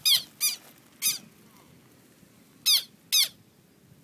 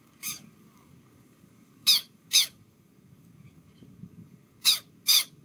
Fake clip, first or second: second